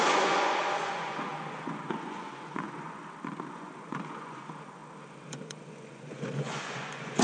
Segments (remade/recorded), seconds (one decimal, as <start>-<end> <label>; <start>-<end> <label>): 0.0-3.0 remade; 3.0-3.5 recorded; 3.5-4.8 remade; 4.8-5.3 recorded; 5.3-7.2 remade